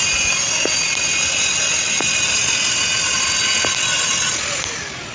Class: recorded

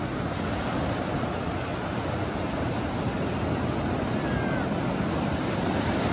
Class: recorded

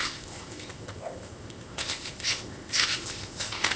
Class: remade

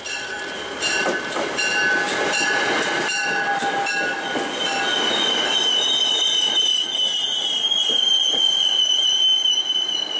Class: recorded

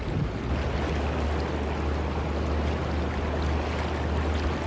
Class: recorded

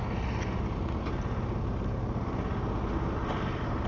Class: recorded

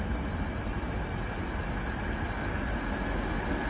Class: recorded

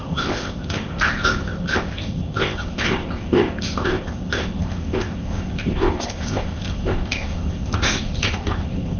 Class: remade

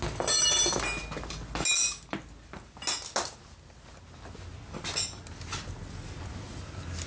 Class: recorded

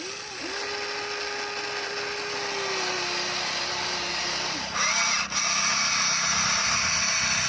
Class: recorded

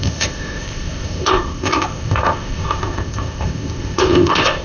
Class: remade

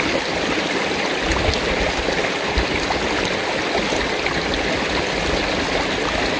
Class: recorded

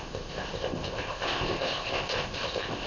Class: remade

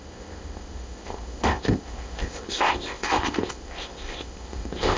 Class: remade